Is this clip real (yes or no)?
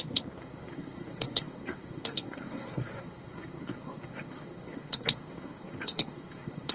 no